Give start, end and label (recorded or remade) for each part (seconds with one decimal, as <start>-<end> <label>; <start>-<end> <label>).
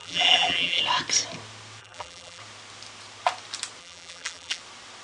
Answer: 0.0-0.8 remade; 0.8-1.8 recorded; 1.8-2.4 remade; 2.4-3.8 recorded; 3.8-4.6 remade; 4.6-5.0 recorded